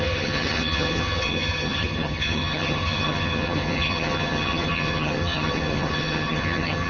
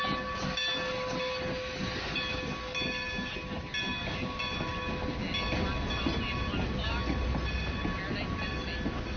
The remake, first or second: first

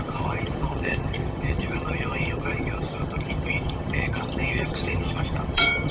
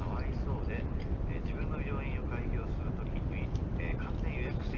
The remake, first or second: first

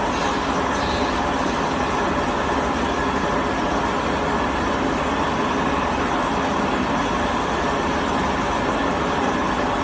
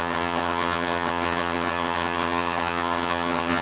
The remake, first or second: second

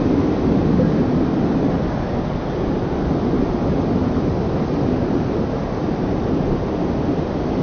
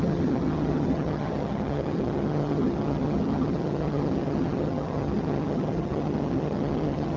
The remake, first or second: second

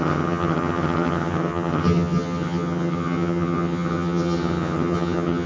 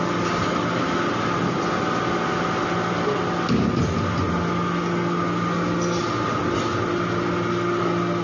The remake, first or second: first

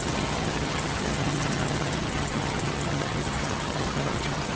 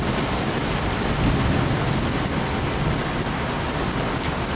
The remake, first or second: first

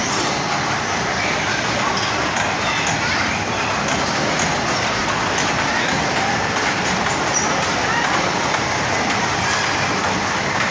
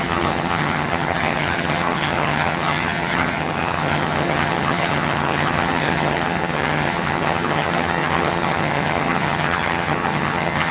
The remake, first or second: second